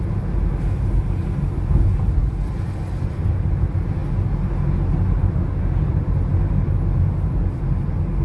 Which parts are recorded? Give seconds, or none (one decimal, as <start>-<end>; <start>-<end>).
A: 0.0-8.2